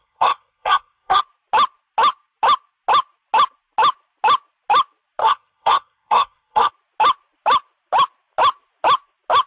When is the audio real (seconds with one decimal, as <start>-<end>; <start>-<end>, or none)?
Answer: 1.2-5.2; 6.7-9.5